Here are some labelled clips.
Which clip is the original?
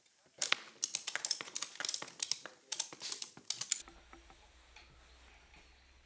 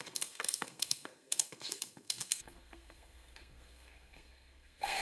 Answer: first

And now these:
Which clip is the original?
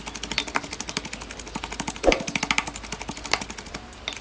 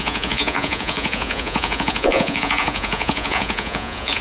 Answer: first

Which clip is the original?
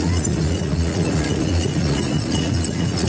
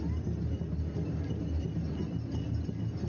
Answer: second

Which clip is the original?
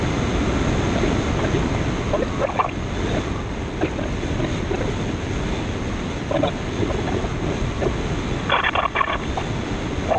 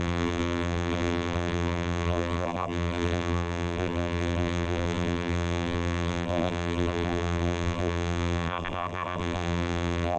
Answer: first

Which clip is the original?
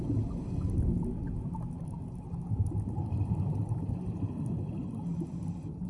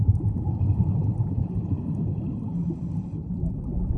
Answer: first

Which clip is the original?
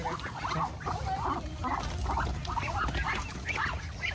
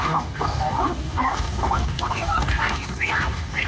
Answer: first